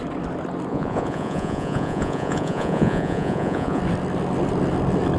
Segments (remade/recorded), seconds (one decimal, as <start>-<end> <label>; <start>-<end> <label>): 0.0-0.7 recorded; 0.7-3.8 remade; 3.8-5.2 recorded